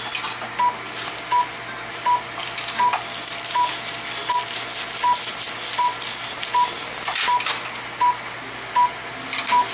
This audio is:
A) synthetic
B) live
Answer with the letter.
B